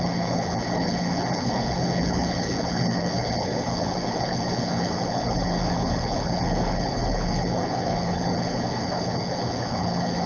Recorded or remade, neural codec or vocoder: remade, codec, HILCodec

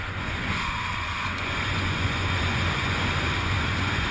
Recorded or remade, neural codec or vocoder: remade, vocoder, Vocos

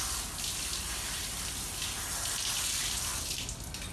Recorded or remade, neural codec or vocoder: recorded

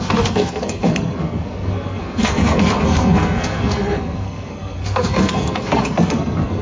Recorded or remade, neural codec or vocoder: remade, codec, SNAC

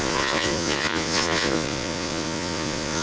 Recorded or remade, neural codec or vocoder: remade, vocoder, Vocos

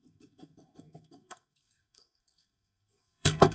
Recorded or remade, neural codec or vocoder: remade, codec, SNAC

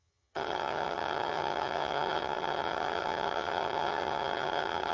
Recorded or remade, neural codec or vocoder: remade, vocoder, HiFi-GAN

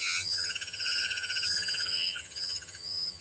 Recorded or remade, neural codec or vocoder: remade, vocoder, HiFi-GAN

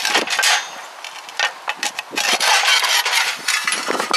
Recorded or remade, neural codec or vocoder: recorded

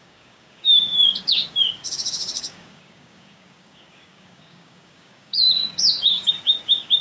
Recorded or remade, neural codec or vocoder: remade, codec, DAC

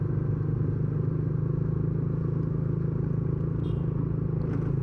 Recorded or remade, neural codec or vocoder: recorded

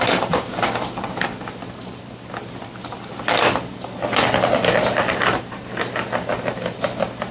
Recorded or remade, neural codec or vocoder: remade, vocoder, BigVGAN v2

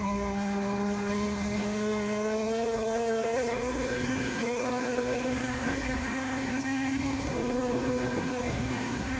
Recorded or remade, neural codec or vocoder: remade, codec, SNAC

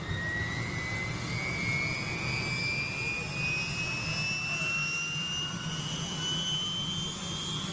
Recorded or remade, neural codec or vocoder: recorded